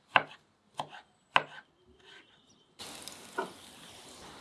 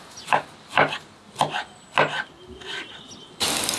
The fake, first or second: first